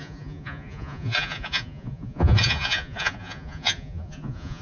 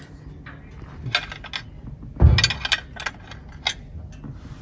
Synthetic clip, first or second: first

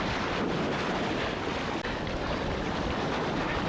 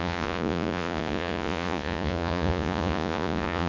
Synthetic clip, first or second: second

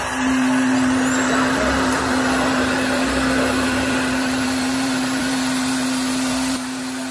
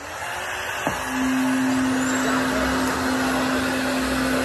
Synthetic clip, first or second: first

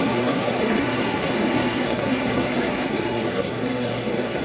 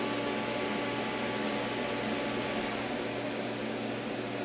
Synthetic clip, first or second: first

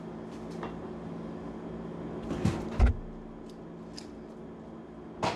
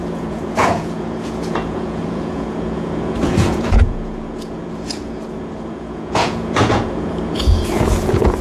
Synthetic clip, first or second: second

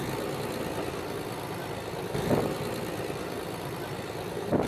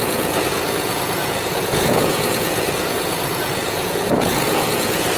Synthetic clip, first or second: second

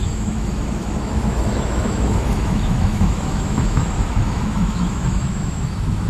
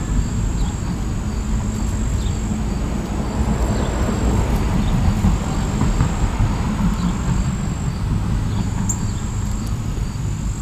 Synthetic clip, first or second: first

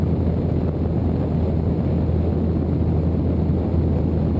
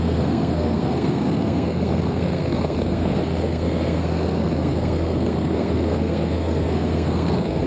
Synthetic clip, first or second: second